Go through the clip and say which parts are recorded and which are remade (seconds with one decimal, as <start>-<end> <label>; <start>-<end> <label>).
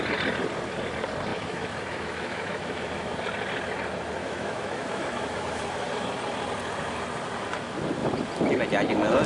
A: 0.0-1.3 recorded; 1.3-3.1 remade; 3.1-4.2 recorded; 4.2-5.6 remade; 5.6-9.3 recorded